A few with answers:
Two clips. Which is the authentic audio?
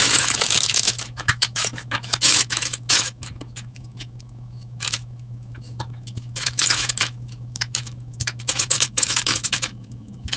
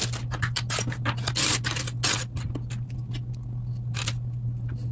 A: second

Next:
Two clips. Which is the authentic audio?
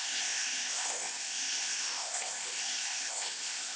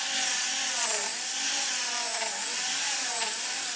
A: second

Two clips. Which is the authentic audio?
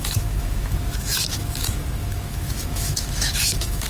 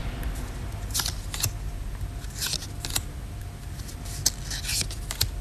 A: second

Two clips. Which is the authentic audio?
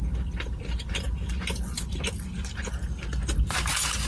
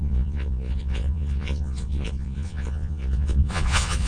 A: first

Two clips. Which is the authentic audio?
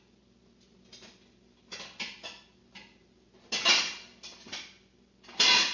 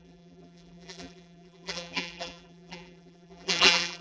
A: first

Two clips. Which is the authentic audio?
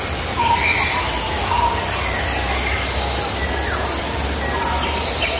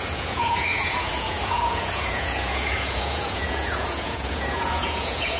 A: first